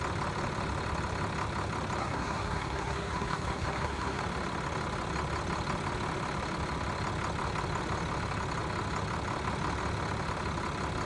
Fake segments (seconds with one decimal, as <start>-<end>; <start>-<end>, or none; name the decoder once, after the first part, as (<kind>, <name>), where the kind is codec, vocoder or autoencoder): 2.0-4.2 (codec, SNAC)